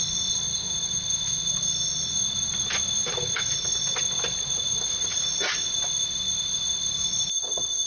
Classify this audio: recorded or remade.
recorded